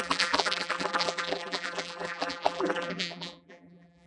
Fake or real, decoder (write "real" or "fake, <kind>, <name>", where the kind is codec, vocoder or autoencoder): fake, vocoder, BigVGAN v2